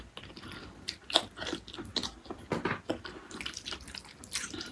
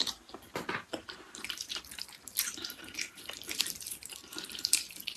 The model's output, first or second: second